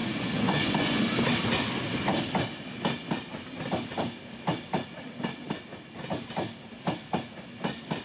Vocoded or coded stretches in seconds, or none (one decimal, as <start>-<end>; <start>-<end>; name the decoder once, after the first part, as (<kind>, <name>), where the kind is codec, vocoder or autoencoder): 0.0-1.0 (vocoder, Vocos)